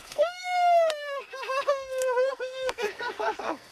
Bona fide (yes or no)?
no